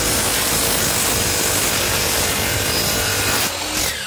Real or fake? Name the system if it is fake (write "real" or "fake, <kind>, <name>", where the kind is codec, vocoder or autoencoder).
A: real